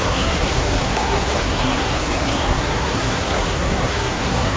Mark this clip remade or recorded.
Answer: remade